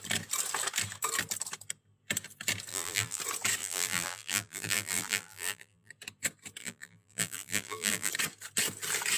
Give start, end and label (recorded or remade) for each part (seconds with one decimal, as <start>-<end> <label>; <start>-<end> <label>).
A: 0.0-2.7 recorded; 2.7-3.2 remade; 3.2-3.6 recorded; 3.6-5.9 remade; 5.9-6.6 recorded; 6.6-8.1 remade; 8.1-9.2 recorded